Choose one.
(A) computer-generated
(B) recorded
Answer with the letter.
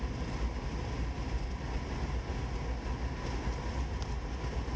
B